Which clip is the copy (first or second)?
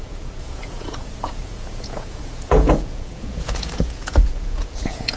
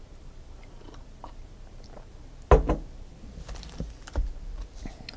first